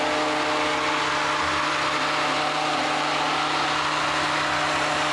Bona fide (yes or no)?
yes